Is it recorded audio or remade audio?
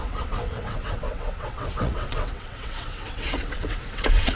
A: remade